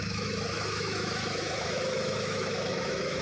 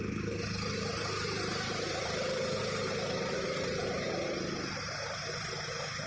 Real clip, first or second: second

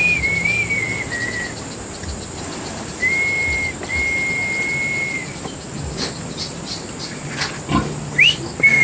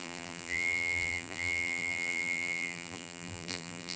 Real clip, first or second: first